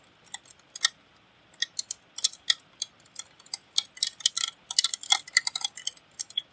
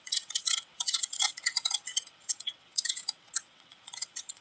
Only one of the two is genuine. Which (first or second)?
first